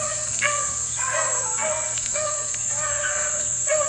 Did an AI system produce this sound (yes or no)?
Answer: yes